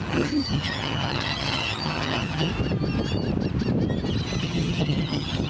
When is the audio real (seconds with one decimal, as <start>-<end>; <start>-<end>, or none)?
2.5-4.4